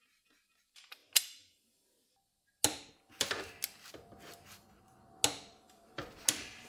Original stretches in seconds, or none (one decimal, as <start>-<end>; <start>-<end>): 0.0-6.7